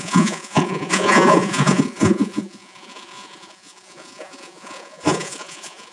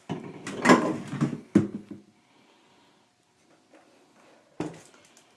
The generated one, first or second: first